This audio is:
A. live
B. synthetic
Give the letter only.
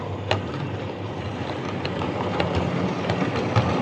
B